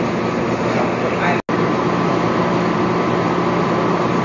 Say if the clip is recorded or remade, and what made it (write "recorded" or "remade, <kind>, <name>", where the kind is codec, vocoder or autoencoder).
recorded